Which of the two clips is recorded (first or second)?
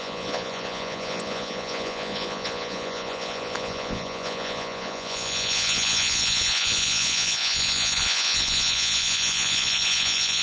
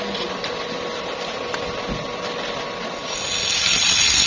second